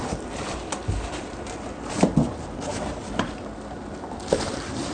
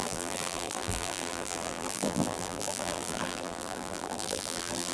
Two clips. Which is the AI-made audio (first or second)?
second